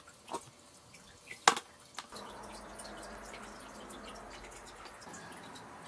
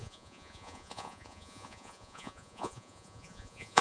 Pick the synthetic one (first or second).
second